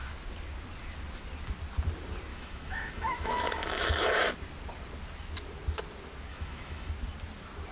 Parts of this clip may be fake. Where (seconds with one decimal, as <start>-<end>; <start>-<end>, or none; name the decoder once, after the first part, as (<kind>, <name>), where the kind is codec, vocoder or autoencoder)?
2.3-4.3 (autoencoder, DAC-VAE); 6.3-6.9